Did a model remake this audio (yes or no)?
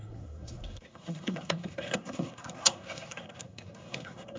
yes